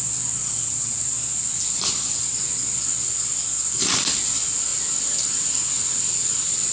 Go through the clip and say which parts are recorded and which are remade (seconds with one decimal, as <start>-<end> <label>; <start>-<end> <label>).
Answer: 0.0-0.4 recorded; 0.4-1.0 remade; 1.0-6.7 recorded